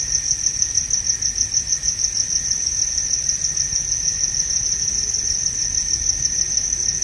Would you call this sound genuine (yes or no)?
yes